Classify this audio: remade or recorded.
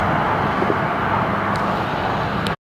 recorded